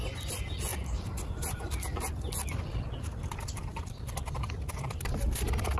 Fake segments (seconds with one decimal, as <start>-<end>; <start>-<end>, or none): none